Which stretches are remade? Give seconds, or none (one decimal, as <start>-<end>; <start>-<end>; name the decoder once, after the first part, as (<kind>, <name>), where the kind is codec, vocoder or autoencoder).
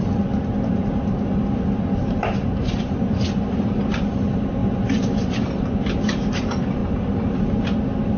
2.0-2.8 (vocoder, BigVGAN v2)